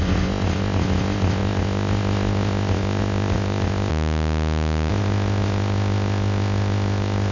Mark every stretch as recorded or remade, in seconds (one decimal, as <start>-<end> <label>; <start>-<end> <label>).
0.0-3.9 remade; 3.9-4.9 recorded; 4.9-7.3 remade

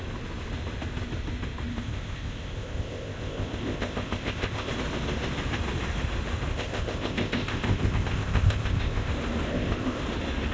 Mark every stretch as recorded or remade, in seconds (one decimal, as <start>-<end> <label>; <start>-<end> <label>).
0.0-1.7 recorded; 1.7-4.7 remade; 4.7-6.5 recorded; 6.5-9.1 remade; 9.1-9.5 recorded; 9.5-10.0 remade; 10.0-10.5 recorded